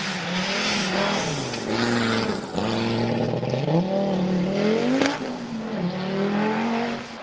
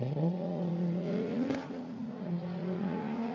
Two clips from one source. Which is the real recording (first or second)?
first